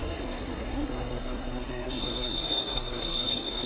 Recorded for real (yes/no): no